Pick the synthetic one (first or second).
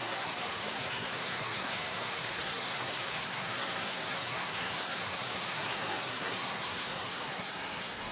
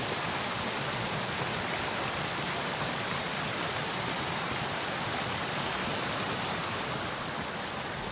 first